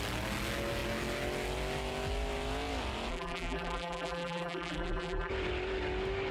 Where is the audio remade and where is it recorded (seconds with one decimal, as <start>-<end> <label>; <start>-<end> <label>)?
0.0-3.1 recorded; 3.1-5.3 remade; 5.3-6.3 recorded